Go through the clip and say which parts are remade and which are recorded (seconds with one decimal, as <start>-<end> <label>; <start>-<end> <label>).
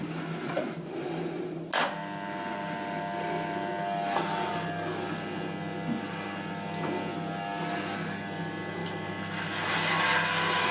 0.0-2.0 recorded; 2.0-3.7 remade; 3.7-8.8 recorded; 8.8-10.0 remade; 10.0-10.7 recorded